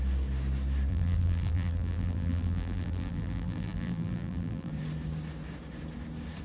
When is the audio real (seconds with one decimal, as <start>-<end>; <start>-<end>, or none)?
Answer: 0.0-0.9; 4.7-6.4